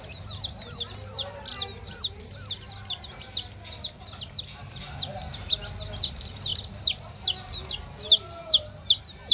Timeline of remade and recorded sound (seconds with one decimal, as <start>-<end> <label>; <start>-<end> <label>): 0.0-9.3 recorded